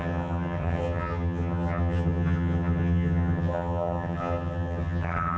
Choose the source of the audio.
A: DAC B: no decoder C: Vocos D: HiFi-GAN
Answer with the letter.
D